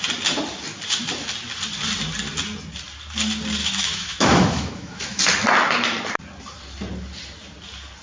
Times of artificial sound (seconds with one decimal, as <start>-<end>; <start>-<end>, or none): 3.6-5.2